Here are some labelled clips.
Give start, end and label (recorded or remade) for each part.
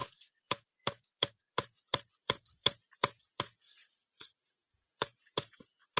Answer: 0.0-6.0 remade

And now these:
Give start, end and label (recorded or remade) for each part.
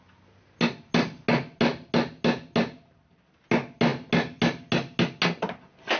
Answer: 0.0-6.0 recorded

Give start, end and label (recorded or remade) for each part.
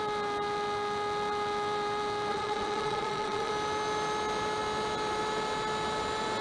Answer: 0.0-2.3 recorded; 2.3-3.5 remade; 3.5-6.4 recorded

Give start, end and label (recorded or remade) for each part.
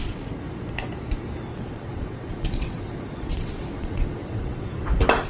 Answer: 0.0-1.5 recorded; 1.5-4.7 remade; 4.7-5.3 recorded